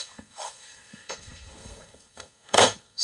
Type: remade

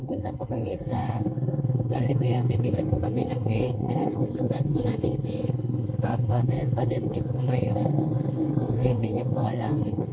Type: remade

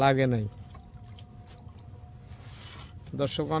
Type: recorded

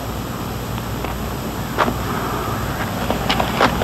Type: recorded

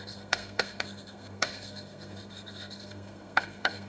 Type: remade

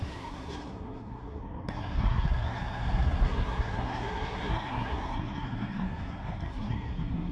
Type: remade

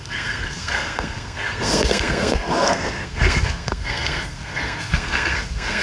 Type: remade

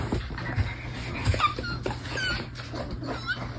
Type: recorded